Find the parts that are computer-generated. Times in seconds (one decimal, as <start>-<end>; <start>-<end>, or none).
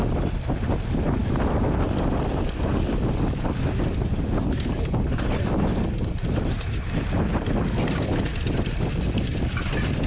none